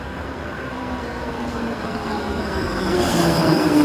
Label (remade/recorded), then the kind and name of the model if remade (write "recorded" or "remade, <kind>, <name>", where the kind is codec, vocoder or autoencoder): remade, codec, SNAC